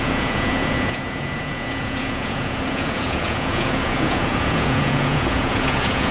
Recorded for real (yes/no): no